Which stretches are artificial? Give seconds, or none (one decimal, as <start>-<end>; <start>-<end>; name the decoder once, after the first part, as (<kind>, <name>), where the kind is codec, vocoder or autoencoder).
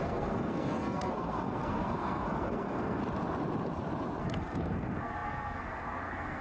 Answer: 0.0-3.0 (codec, SNAC); 4.2-6.4